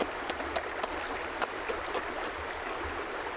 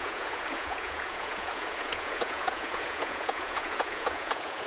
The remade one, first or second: second